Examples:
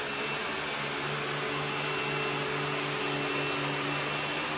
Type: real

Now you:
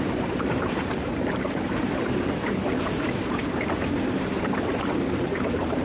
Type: fake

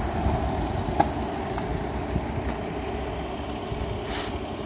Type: real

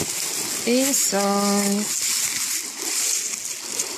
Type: real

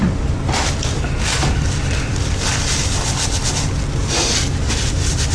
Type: fake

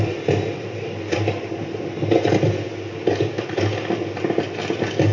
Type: real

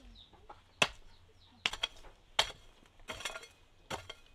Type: real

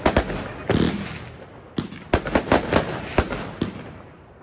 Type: real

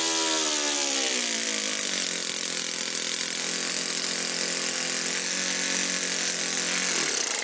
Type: real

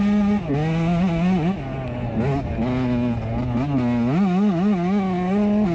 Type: real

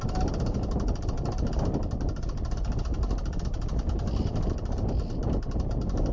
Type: real